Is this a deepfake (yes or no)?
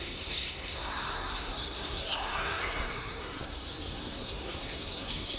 yes